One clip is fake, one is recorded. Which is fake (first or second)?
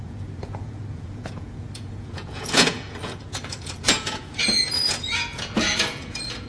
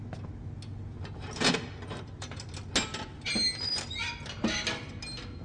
first